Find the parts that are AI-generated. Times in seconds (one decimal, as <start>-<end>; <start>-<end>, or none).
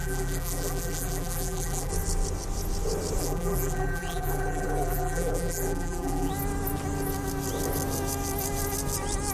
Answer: 0.0-1.9; 3.2-6.3